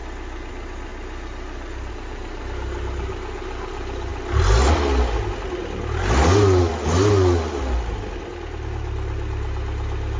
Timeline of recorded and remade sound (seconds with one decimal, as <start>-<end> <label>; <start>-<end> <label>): 0.0-10.2 recorded